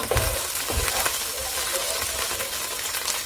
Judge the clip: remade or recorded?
recorded